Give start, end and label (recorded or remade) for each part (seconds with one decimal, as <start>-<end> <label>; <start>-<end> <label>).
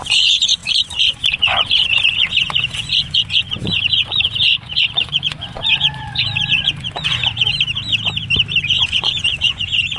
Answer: 0.0-7.5 remade; 7.5-8.6 recorded; 8.6-10.0 remade